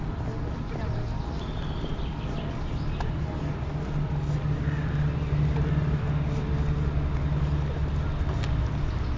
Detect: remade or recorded recorded